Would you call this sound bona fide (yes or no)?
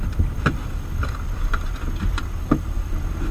no